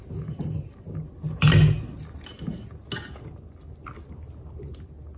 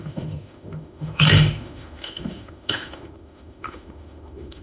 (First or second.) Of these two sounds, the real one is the first